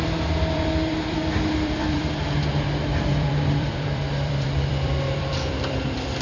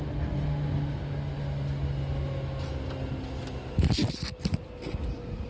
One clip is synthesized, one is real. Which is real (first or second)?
second